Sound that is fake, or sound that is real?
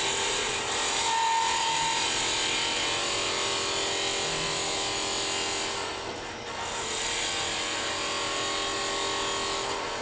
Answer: real